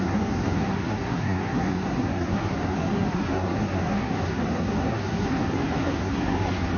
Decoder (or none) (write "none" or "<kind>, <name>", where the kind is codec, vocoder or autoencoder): codec, SNAC